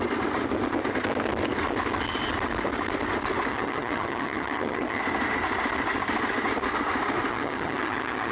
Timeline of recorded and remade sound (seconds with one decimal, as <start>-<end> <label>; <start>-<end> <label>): 0.0-3.5 recorded; 3.5-5.0 remade; 5.0-7.3 recorded; 7.3-8.3 remade